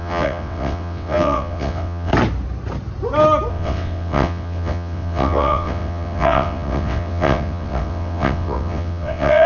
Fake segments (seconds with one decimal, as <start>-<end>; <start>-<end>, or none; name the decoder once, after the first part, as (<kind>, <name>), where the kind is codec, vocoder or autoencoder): 0.0-2.1 (vocoder, WaveNeXt); 3.5-9.5